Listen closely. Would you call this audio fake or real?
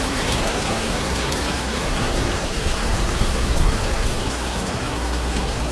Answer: fake